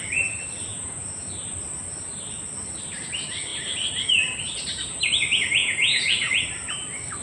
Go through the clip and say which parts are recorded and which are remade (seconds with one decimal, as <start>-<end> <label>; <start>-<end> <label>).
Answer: 0.0-0.7 recorded; 0.7-1.3 remade; 1.3-5.6 recorded; 5.6-6.3 remade; 6.3-7.2 recorded